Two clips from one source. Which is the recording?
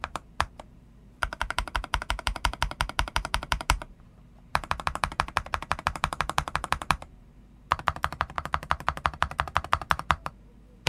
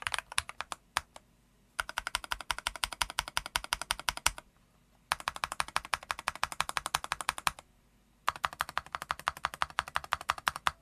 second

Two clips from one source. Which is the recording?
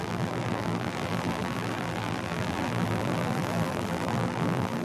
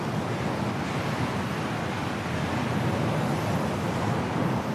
second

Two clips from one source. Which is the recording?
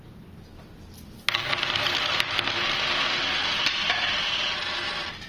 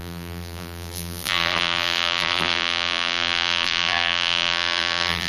first